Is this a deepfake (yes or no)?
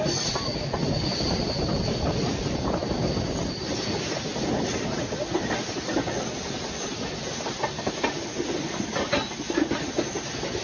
no